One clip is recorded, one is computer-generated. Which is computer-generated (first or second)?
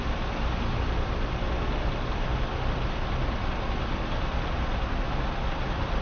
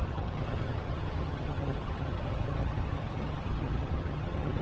second